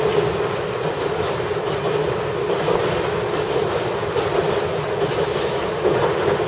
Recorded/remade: recorded